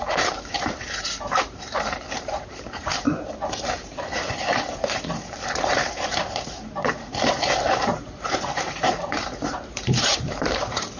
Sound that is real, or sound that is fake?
fake